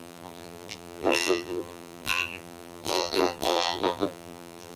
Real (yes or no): no